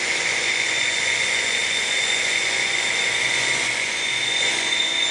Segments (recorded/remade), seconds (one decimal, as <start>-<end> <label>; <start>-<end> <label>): 0.0-5.1 remade